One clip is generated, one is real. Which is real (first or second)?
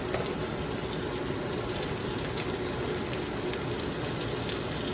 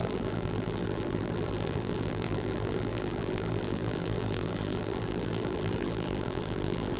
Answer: first